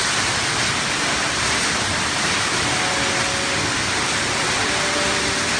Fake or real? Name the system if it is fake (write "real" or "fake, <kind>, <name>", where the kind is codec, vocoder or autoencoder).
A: real